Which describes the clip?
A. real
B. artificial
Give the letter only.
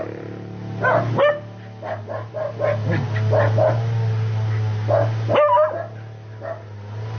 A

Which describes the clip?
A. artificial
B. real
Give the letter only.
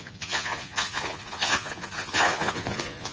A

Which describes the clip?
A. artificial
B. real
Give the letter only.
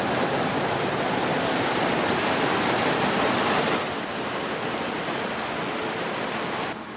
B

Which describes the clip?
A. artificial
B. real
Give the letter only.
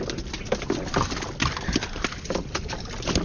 B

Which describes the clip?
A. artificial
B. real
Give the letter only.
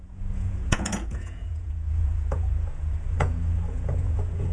A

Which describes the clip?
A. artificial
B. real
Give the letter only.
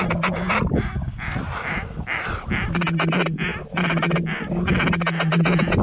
B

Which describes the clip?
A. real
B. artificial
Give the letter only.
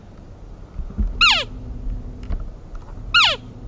A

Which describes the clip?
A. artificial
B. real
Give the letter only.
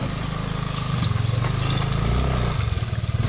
B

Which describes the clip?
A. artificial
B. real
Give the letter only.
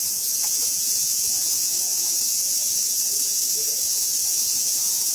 A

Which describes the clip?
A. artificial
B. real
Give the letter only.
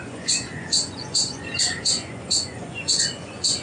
A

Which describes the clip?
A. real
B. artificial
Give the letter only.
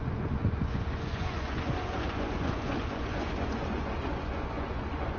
B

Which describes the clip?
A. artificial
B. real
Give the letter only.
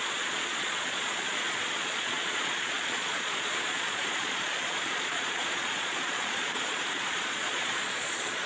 A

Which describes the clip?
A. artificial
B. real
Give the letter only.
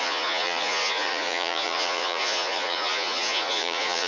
A